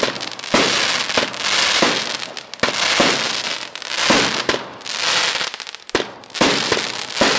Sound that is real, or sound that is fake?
real